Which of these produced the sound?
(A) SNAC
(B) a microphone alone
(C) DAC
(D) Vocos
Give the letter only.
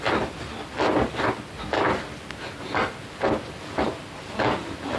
B